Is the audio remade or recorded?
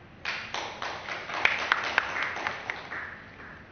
recorded